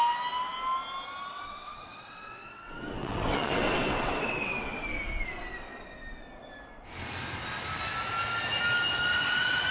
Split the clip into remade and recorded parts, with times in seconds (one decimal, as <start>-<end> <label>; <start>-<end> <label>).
0.0-1.3 recorded; 1.3-4.8 remade; 4.8-9.1 recorded; 9.1-9.7 remade